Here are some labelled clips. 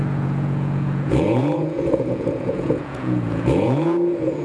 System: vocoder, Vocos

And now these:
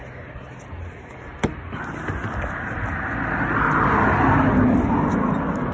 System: none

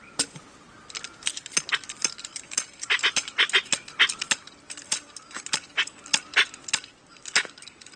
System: none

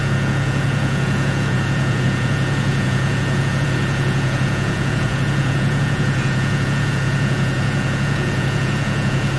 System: vocoder, Vocos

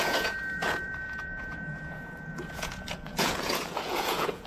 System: vocoder, Vocos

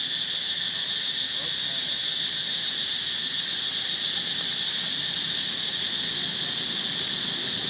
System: none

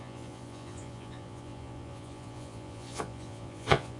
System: vocoder, Vocos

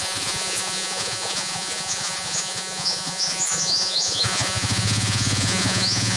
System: vocoder, Vocos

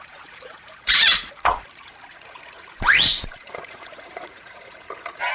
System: vocoder, Vocos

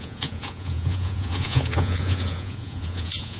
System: vocoder, Vocos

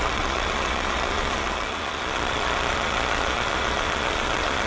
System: vocoder, Vocos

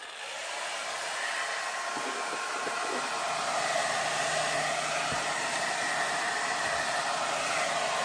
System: none